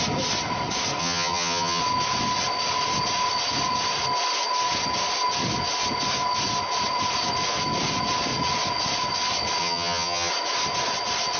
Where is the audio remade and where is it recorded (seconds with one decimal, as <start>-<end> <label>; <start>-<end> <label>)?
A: 0.0-1.0 recorded; 1.0-1.8 remade; 1.8-9.6 recorded; 9.6-10.3 remade; 10.3-11.4 recorded